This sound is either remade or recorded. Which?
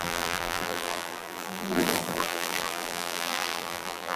remade